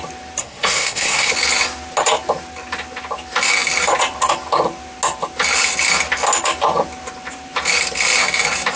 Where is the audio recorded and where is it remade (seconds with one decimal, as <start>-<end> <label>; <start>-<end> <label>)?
0.0-0.4 recorded; 0.4-1.3 remade; 1.3-8.8 recorded